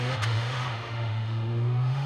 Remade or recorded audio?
remade